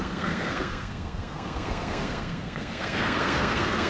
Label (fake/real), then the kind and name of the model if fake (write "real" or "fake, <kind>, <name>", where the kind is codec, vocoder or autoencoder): fake, codec, SNAC